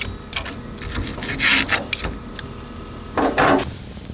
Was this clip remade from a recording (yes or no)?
no